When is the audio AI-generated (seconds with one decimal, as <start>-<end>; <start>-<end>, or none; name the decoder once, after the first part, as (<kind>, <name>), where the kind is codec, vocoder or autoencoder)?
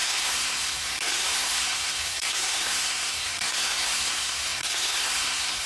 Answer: 0.0-5.7 (codec, SNAC)